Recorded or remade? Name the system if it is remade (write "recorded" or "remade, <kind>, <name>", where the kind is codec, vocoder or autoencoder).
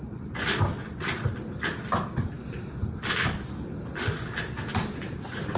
recorded